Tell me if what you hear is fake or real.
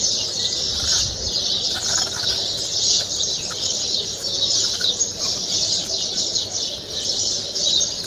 fake